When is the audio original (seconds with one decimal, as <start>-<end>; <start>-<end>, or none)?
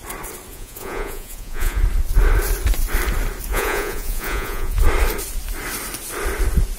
0.0-0.5; 1.8-3.5; 4.8-6.8